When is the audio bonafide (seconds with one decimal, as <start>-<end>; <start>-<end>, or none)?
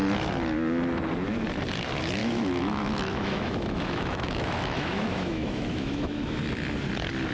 0.0-2.2; 6.4-7.3